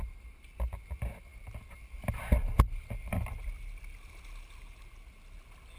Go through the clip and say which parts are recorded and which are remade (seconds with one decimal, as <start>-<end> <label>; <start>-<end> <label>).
0.0-5.8 recorded